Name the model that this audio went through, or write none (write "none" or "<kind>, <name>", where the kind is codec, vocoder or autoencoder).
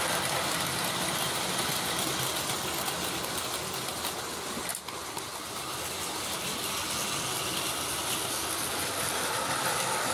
none